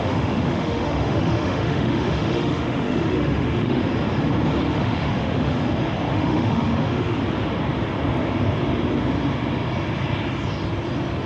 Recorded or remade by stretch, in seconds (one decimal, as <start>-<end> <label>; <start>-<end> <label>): 0.0-3.8 remade; 3.8-4.7 recorded; 4.7-5.6 remade; 5.6-6.1 recorded; 6.1-7.2 remade; 7.2-11.3 recorded